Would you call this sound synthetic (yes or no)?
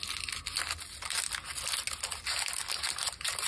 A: no